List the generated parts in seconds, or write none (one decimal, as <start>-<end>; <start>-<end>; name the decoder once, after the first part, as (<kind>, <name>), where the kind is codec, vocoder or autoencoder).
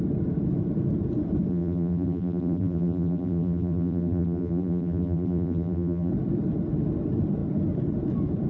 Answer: 1.5-6.1 (vocoder, BigVGAN v2)